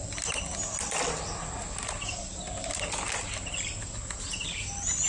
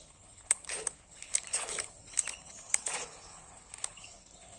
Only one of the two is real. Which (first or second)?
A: first